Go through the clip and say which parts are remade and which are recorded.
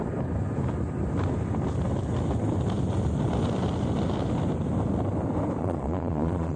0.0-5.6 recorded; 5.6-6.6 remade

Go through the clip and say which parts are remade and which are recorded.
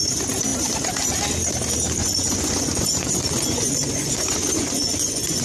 0.0-2.0 recorded; 2.0-5.4 remade